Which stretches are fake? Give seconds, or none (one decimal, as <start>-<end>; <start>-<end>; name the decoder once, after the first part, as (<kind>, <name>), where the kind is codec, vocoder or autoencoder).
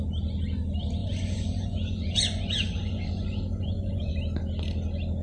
1.0-4.1 (vocoder, Vocos)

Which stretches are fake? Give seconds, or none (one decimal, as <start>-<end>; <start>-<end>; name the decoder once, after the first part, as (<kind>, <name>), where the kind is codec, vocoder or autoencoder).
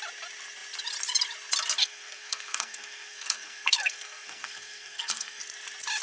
1.8-5.4 (codec, SNAC)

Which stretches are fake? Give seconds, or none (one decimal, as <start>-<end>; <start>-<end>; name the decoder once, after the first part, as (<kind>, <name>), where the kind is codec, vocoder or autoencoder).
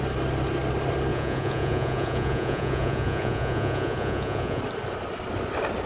1.1-4.6 (vocoder, Vocos)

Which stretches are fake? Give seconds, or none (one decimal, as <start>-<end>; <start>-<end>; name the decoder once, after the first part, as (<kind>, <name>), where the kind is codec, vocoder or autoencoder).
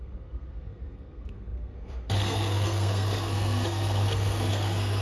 0.0-5.0 (codec, SNAC)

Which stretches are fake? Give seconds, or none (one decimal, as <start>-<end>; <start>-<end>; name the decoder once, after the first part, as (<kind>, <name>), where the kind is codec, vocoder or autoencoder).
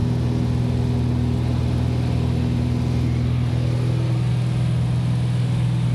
none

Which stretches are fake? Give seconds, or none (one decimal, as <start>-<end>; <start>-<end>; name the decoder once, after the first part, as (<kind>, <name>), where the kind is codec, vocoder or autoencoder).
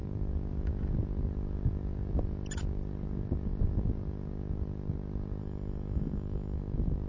5.4-6.6 (autoencoder, DAC-VAE)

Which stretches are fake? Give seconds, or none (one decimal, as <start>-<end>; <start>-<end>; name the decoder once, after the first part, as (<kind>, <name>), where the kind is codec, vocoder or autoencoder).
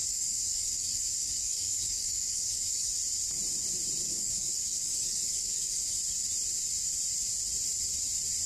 0.0-2.9 (codec, DAC); 4.1-6.0